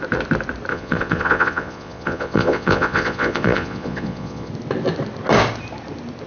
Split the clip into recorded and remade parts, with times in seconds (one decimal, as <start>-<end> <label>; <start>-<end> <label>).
0.0-0.7 recorded; 0.7-4.5 remade; 4.5-6.3 recorded